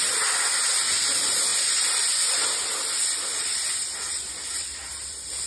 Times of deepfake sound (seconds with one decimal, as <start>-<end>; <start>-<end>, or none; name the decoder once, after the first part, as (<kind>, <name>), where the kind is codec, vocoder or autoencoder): 0.0-5.5 (vocoder, BigVGAN v2)